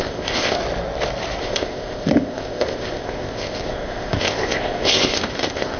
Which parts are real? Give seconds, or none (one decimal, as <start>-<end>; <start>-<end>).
0.6-1.4

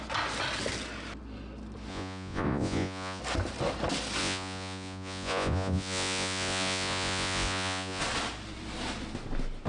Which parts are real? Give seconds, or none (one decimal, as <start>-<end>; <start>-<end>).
0.0-1.9; 3.2-4.2; 8.0-9.7

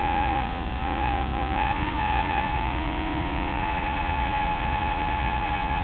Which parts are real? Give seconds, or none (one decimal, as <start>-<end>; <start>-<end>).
none

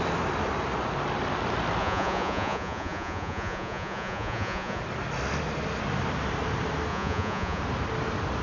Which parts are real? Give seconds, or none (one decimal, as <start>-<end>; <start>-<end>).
0.0-1.8; 4.8-6.9; 7.6-8.4

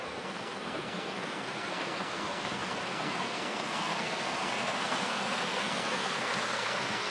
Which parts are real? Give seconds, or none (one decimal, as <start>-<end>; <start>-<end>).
none

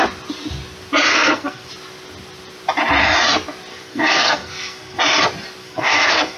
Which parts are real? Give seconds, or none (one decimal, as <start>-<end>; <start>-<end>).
0.0-1.1; 1.7-3.7; 5.0-5.6

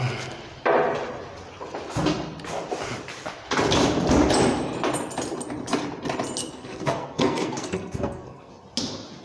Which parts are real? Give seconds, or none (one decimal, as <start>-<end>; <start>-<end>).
0.0-6.4; 8.5-9.2